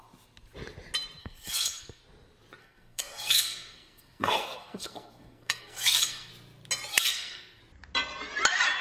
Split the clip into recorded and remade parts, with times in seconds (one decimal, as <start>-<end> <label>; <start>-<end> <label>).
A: 0.0-1.2 recorded; 1.2-2.0 remade; 2.0-2.6 recorded; 2.6-6.3 remade; 6.3-6.9 recorded; 6.9-7.6 remade; 7.6-8.8 recorded